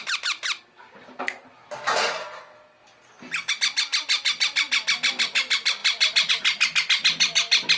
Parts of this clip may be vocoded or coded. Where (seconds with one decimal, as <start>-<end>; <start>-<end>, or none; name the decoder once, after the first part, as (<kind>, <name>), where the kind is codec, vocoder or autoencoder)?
none